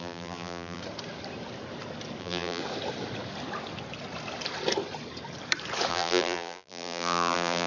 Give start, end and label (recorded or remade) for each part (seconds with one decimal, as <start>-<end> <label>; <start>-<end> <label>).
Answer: 0.0-0.8 remade; 0.8-2.2 recorded; 2.2-2.6 remade; 2.6-5.9 recorded; 5.9-7.7 remade